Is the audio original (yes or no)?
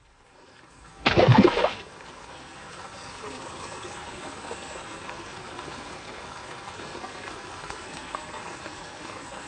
no